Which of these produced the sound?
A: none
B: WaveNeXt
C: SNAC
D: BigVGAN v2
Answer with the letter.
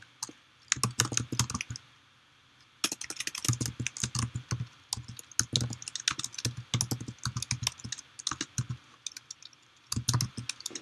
A